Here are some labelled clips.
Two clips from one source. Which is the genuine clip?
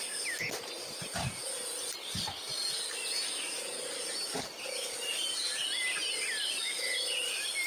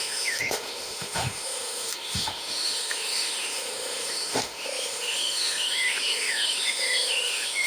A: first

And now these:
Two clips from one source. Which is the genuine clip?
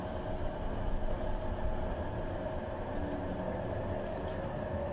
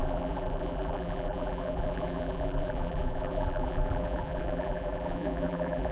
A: first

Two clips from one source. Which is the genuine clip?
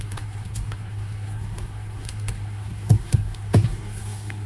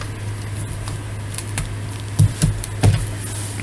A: second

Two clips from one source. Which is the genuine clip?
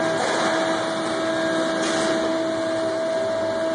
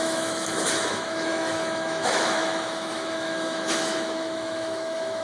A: first